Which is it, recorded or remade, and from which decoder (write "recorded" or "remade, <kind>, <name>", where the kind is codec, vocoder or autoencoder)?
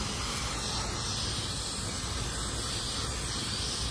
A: recorded